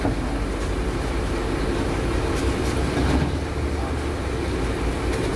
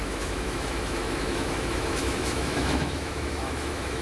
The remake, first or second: second